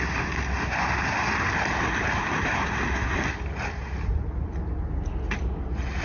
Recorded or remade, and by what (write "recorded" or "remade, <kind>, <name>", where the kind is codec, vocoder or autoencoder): recorded